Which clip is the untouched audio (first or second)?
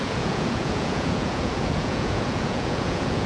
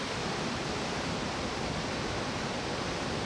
second